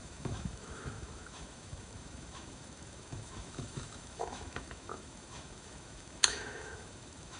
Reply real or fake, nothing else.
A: fake